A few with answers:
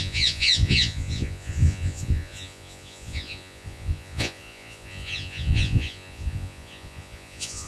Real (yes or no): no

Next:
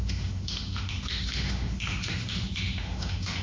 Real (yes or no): no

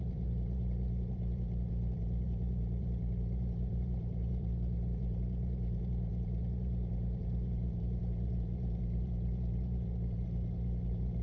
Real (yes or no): no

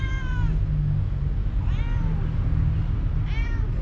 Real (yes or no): yes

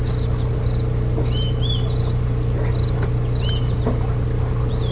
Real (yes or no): yes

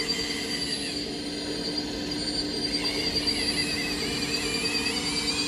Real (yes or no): yes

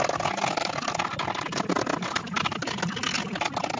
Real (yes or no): yes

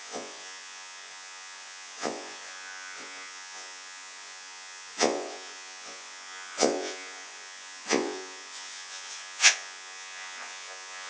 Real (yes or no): no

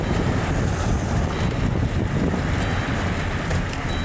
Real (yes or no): yes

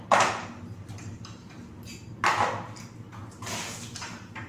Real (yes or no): yes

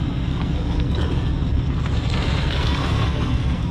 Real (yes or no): no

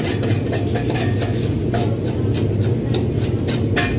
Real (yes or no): yes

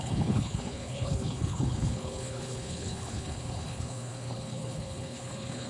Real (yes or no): no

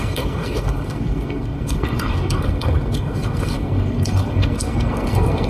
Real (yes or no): no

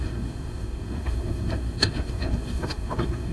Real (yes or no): no